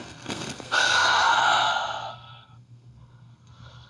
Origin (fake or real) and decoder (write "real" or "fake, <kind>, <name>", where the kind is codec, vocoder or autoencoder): fake, codec, SNAC